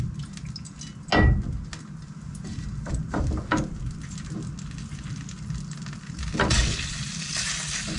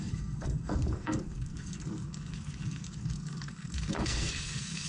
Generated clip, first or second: second